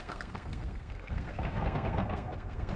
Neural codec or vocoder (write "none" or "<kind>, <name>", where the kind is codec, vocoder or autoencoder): codec, SNAC